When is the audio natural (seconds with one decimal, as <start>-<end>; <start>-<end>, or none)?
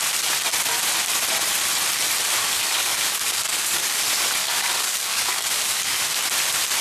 0.0-2.4; 4.0-4.4; 6.2-6.8